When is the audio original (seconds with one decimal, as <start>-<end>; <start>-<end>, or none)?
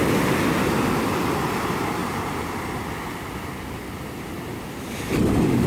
0.0-2.0; 2.9-5.7